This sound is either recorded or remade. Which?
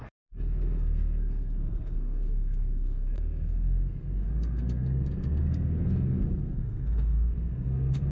remade